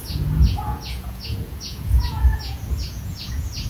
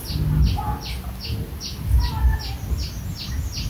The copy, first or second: first